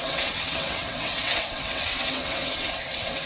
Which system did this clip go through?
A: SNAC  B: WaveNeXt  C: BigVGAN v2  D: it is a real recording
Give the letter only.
B